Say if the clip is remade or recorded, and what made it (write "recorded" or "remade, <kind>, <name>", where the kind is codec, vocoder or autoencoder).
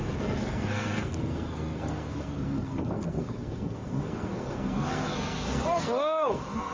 remade, codec, SNAC